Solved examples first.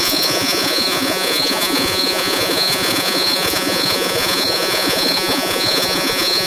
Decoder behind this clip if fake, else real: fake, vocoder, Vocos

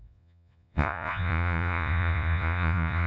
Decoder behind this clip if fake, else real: fake, vocoder, Vocos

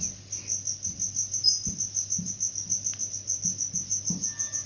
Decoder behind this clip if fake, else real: real